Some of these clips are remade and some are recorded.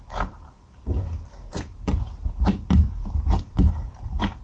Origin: remade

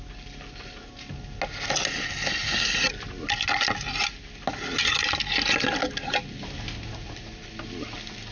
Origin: recorded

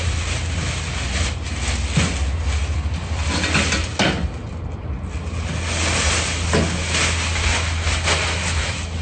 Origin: recorded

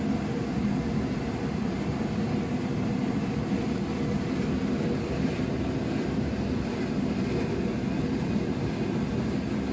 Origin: remade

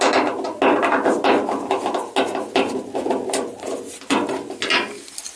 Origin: recorded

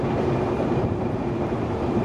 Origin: remade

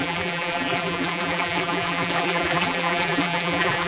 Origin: remade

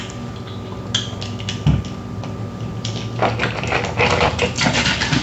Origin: recorded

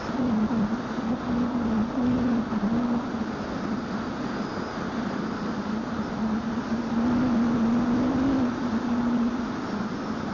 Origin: recorded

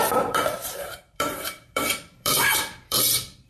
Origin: remade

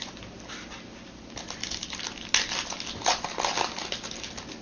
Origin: recorded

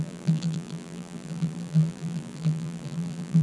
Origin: remade